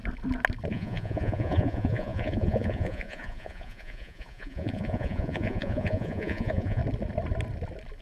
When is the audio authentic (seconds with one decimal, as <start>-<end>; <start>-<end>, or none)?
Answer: 0.0-0.7; 6.8-8.0